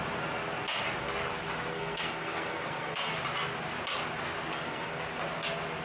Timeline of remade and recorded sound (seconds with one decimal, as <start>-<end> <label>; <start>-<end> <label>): 0.0-1.7 recorded; 1.7-3.1 remade; 3.1-4.5 recorded; 4.5-5.0 remade; 5.0-5.8 recorded